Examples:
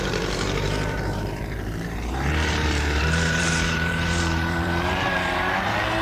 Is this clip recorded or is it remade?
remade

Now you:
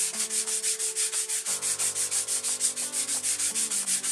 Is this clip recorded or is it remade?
recorded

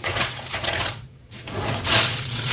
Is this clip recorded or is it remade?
remade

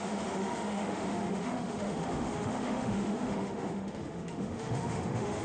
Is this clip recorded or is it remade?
remade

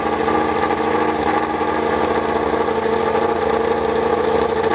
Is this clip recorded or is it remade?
recorded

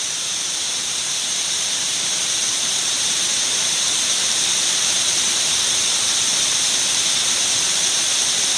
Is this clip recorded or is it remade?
remade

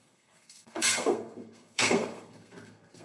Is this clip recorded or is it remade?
remade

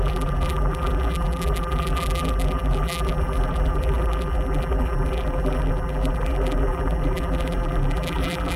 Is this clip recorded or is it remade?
remade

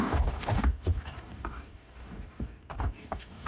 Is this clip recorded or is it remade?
remade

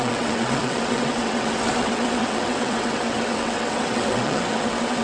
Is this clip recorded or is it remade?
remade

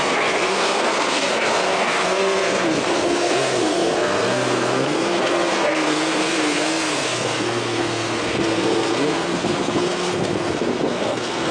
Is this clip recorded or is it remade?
remade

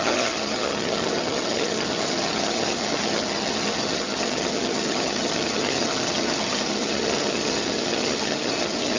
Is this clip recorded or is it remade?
remade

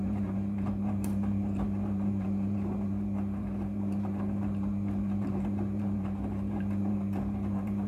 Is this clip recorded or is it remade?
remade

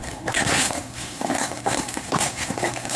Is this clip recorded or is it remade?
remade